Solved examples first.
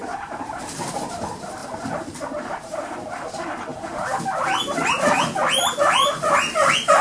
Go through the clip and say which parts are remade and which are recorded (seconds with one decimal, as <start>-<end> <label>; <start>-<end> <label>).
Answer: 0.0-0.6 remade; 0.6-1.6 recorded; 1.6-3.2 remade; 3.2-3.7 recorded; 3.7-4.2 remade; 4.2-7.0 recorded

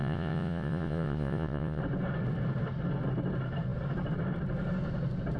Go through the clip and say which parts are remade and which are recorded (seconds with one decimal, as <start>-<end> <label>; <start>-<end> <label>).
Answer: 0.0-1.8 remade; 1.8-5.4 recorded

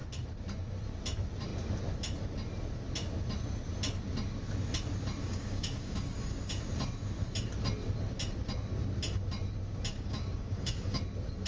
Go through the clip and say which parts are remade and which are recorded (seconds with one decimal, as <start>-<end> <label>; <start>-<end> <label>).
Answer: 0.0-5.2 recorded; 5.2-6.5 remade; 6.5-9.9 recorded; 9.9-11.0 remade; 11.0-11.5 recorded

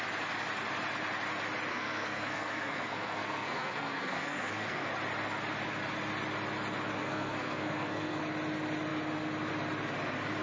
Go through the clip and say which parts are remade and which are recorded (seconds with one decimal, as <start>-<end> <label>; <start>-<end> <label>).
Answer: 0.0-1.7 recorded; 1.7-4.9 remade; 4.9-7.0 recorded; 7.0-8.2 remade; 8.2-10.4 recorded

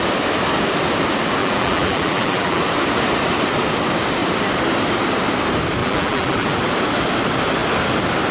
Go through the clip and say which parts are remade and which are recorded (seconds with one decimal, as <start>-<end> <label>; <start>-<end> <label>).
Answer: 0.0-1.4 recorded; 1.4-2.6 remade; 2.6-5.8 recorded; 5.8-6.6 remade; 6.6-8.3 recorded

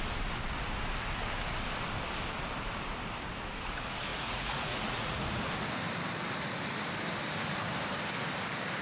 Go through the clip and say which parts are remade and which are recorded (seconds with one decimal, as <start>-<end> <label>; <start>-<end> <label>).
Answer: 0.0-4.1 recorded; 4.1-5.2 remade; 5.2-8.8 recorded

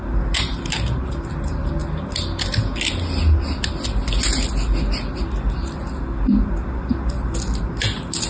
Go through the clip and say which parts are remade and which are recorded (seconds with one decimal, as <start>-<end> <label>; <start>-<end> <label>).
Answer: 0.0-8.3 recorded